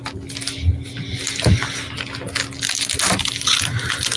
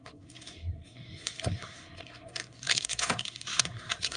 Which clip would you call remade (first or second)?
second